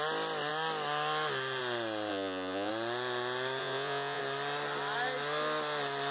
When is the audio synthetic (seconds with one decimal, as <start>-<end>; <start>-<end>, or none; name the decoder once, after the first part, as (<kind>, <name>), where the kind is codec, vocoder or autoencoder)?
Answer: 2.1-2.7 (vocoder, Vocos); 3.6-4.2